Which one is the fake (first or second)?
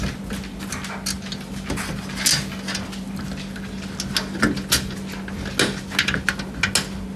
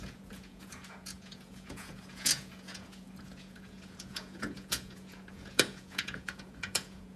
second